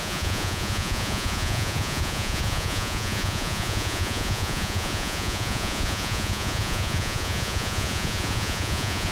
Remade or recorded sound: remade